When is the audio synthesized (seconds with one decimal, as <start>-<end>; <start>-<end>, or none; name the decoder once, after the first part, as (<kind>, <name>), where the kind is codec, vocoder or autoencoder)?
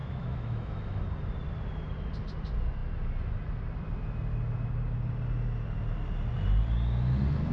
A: 0.0-1.0 (autoencoder, DAC-VAE)